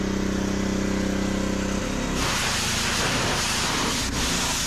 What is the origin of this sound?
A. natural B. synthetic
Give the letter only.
A